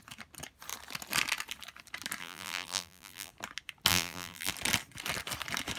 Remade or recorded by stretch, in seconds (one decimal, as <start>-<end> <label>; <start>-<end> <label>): 0.0-2.2 recorded; 2.2-3.3 remade; 3.3-3.9 recorded; 3.9-4.5 remade; 4.5-5.8 recorded